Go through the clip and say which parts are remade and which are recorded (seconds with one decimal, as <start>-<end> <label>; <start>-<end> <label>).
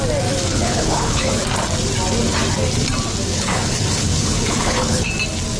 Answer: 0.0-0.5 recorded; 0.5-1.3 remade; 1.3-3.3 recorded; 3.3-5.1 remade; 5.1-5.6 recorded